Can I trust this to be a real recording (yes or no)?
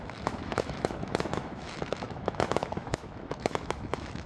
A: no